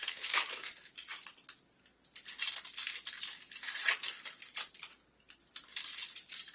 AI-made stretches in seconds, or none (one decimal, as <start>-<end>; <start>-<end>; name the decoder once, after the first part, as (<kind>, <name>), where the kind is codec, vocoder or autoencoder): 0.0-1.9 (vocoder, BigVGAN v2); 5.5-6.5